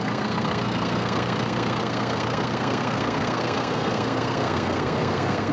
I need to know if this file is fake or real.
fake